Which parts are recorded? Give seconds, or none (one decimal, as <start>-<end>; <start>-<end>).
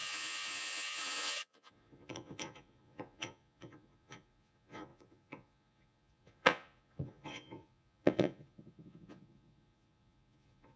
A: none